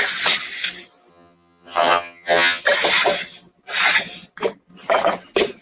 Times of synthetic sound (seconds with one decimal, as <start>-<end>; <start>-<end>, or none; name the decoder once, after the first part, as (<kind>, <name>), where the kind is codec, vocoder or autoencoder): 1.1-2.6 (vocoder, HiFi-GAN)